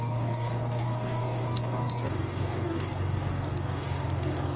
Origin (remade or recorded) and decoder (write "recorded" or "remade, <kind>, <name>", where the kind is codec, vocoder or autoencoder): remade, codec, DAC